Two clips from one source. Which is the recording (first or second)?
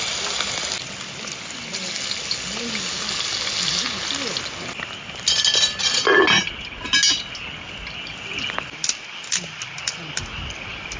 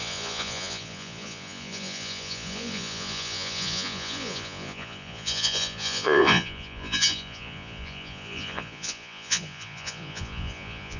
first